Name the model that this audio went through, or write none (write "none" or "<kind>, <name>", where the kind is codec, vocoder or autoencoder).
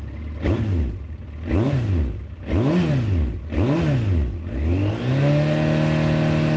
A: none